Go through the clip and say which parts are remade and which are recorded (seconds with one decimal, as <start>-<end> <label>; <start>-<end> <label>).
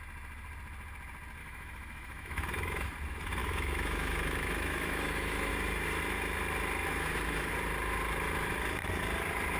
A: 0.0-1.4 recorded; 1.4-2.9 remade; 2.9-3.4 recorded; 3.4-5.5 remade; 5.5-6.8 recorded; 6.8-7.5 remade; 7.5-9.6 recorded